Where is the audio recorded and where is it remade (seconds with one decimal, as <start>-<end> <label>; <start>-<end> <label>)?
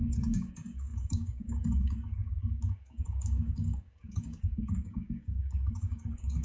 0.0-6.4 remade